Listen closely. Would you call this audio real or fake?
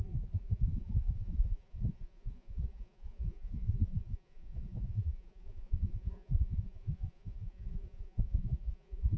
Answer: fake